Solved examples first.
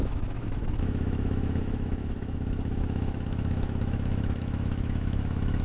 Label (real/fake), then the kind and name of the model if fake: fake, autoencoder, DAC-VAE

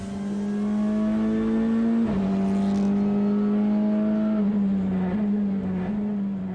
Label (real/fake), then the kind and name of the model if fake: real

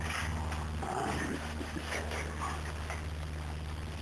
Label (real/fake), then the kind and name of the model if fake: real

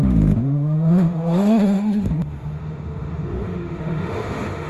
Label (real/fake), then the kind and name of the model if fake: fake, autoencoder, DAC-VAE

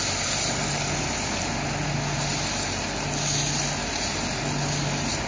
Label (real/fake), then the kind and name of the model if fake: real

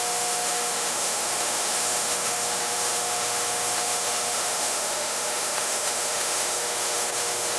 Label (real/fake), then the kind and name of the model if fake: fake, autoencoder, DAC-VAE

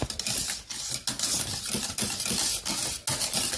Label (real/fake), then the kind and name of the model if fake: real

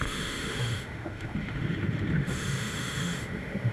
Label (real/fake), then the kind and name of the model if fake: fake, autoencoder, DAC-VAE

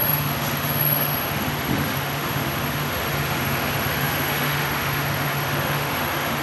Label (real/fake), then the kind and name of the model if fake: fake, autoencoder, DAC-VAE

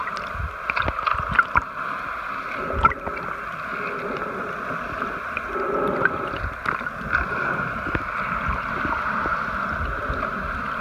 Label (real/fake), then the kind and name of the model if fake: real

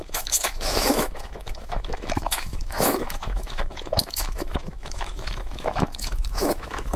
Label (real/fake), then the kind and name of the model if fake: fake, autoencoder, DAC-VAE